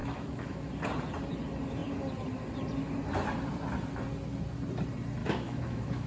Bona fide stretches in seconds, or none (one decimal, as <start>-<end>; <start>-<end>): 0.7-5.2